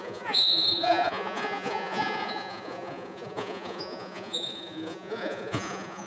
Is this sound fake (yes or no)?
yes